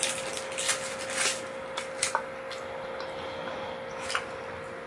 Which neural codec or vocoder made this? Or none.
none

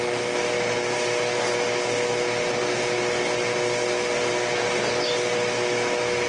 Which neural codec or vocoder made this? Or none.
none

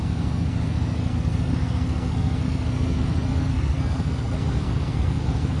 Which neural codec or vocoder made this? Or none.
codec, SNAC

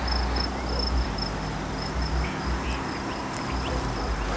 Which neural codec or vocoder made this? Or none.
none